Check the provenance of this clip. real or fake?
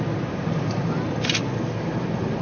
real